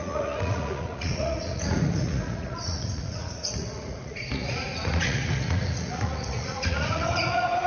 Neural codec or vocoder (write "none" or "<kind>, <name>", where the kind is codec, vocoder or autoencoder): vocoder, Vocos